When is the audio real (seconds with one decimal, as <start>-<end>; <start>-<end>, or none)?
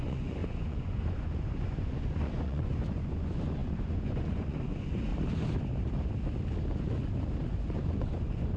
5.1-7.5